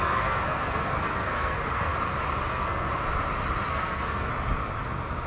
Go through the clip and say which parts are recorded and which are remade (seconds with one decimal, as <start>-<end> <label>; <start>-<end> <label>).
0.0-1.9 remade; 1.9-2.5 recorded; 2.5-2.9 remade; 2.9-3.7 recorded; 3.7-4.3 remade; 4.3-5.3 recorded